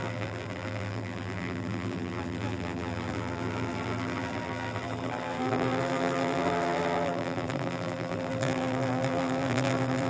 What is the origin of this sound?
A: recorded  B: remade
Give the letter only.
B